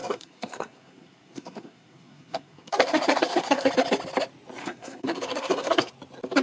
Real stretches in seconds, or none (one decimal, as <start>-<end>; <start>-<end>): 3.7-4.6; 5.9-6.4